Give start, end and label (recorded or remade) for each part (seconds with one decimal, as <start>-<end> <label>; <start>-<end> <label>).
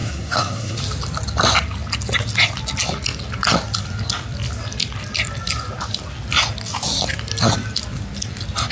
0.0-0.8 remade; 0.8-8.7 recorded